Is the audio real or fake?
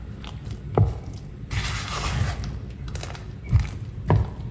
real